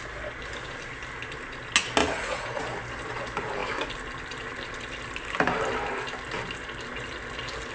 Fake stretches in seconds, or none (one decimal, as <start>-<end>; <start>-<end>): 2.0-2.6